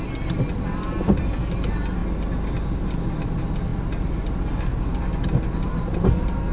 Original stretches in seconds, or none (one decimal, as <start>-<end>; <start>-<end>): 0.0-6.5